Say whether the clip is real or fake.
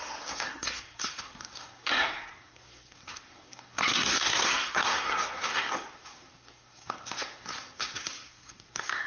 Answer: fake